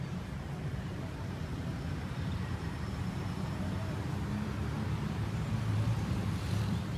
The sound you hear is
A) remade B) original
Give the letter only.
A